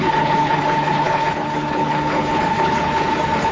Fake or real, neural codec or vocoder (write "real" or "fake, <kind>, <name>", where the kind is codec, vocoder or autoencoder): fake, codec, HILCodec